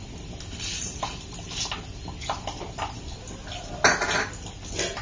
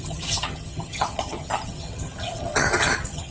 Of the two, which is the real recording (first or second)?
first